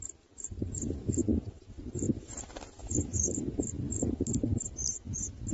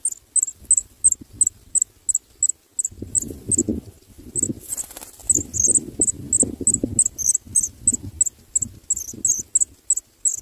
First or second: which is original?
second